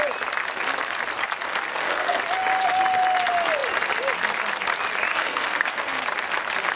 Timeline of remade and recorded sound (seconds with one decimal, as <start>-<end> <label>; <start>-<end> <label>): 0.0-1.7 recorded; 1.7-2.2 remade; 2.2-5.1 recorded; 5.1-6.0 remade; 6.0-6.8 recorded

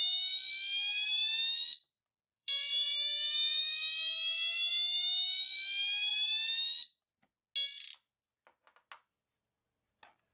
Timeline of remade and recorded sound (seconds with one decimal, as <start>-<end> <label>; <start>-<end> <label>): 0.0-2.1 recorded; 2.1-3.6 remade; 3.6-10.3 recorded

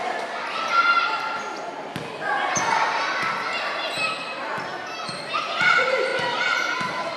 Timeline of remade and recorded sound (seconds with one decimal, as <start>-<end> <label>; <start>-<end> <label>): 0.0-7.2 recorded